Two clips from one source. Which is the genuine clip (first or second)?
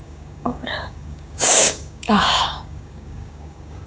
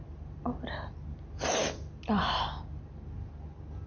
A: second